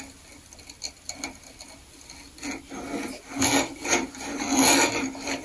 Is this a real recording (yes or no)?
yes